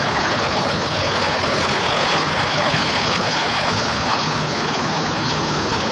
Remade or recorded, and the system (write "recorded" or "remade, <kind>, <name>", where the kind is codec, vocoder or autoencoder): remade, codec, HILCodec